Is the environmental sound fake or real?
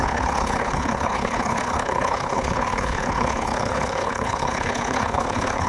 fake